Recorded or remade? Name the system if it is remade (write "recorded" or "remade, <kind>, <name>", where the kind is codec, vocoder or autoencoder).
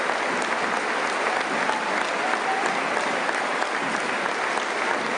recorded